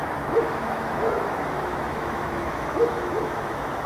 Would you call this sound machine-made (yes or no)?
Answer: yes